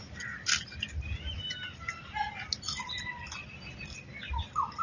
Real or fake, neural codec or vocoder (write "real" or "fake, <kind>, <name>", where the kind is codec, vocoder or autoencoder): real